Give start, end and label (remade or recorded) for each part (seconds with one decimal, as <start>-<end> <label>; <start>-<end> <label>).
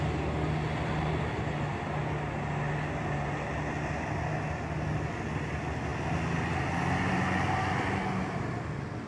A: 0.0-9.1 recorded